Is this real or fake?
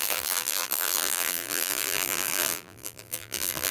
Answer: fake